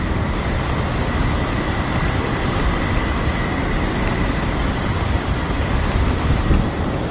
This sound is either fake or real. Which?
fake